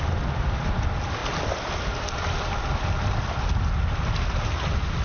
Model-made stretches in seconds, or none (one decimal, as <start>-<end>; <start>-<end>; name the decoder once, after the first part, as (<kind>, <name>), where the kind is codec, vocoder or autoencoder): none